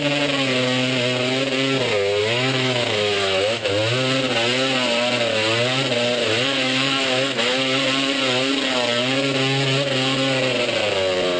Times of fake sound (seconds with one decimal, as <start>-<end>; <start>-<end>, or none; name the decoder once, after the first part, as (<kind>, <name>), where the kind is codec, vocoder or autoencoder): 2.2-3.7 (autoencoder, DAC-VAE); 6.2-7.6